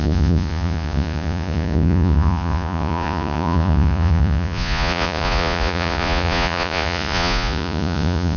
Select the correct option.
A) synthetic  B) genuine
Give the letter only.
A